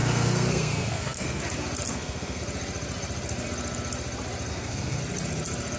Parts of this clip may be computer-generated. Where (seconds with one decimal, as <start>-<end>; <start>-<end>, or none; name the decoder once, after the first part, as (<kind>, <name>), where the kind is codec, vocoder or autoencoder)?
0.0-1.4 (codec, SNAC); 1.9-2.4; 4.5-5.0